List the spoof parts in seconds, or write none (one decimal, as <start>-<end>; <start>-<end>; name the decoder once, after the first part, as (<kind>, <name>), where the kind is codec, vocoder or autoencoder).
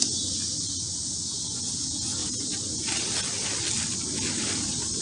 none